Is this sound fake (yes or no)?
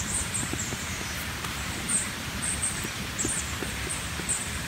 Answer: yes